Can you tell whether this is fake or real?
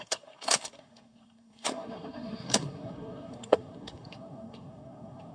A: fake